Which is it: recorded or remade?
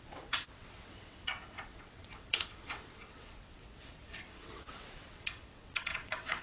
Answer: remade